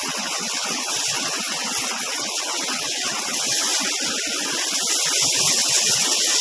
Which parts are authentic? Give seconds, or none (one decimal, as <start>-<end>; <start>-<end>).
3.7-5.5